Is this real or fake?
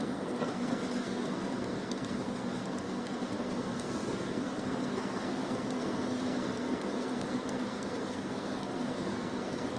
fake